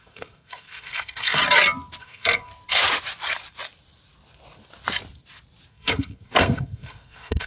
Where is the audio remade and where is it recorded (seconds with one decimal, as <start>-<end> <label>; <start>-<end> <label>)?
0.0-1.4 remade; 1.4-2.0 recorded; 2.0-2.5 remade; 2.5-5.7 recorded; 5.7-7.5 remade